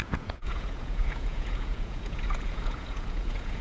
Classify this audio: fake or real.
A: fake